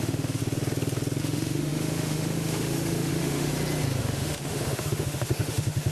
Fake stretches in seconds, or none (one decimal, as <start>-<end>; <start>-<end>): 0.0-0.4; 1.2-3.5; 4.0-5.9